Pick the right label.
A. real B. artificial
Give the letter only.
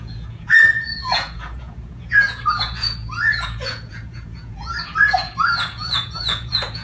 B